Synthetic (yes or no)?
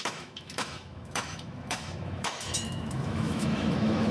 yes